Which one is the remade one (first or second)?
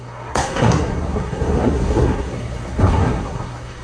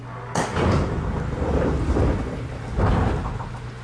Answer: first